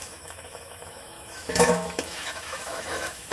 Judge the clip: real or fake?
fake